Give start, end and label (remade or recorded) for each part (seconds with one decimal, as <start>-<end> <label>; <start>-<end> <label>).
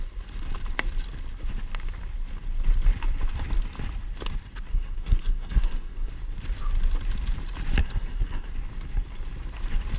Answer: 0.0-4.7 recorded; 4.7-6.1 remade; 6.1-7.8 recorded; 7.8-8.5 remade; 8.5-10.0 recorded